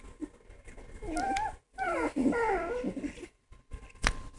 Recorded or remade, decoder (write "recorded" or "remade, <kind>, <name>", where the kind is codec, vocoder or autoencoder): recorded